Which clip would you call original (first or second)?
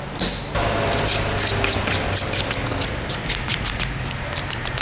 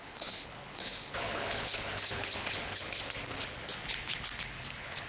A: first